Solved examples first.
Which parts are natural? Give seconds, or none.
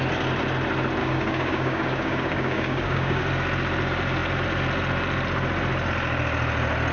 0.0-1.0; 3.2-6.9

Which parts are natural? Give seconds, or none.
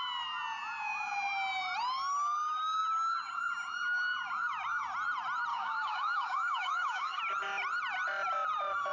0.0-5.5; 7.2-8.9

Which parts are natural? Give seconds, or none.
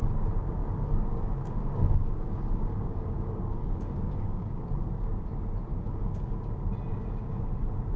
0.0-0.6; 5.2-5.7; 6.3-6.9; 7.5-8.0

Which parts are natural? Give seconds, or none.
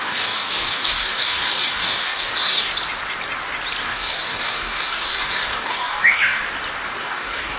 2.7-3.8; 6.4-7.0